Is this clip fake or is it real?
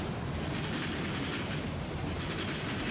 real